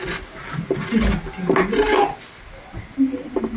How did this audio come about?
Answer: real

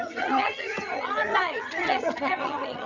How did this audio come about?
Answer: fake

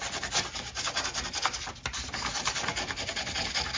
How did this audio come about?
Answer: real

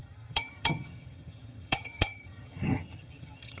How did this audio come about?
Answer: fake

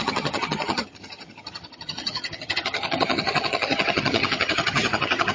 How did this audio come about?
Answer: fake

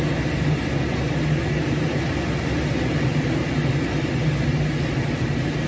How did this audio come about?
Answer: real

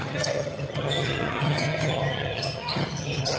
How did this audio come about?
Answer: fake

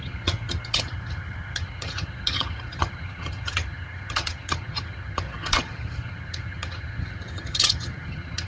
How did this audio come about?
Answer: fake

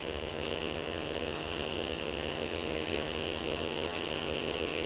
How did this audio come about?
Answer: fake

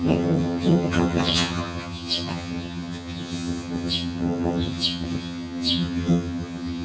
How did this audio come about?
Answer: fake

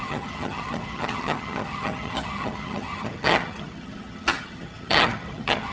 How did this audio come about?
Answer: fake